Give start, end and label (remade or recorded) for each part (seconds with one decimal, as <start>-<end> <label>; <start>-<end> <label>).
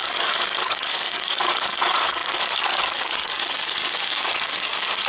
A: 0.0-5.1 remade